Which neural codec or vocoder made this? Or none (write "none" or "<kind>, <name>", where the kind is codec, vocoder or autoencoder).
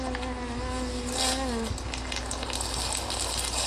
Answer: none